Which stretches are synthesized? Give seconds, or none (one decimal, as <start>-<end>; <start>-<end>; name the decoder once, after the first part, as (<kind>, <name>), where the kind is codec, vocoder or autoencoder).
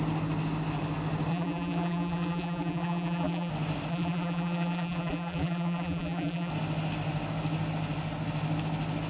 1.3-3.5 (vocoder, BigVGAN v2); 3.9-6.5